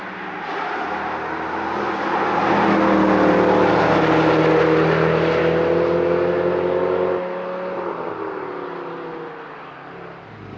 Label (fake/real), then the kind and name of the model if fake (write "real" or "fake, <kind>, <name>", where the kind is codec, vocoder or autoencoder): real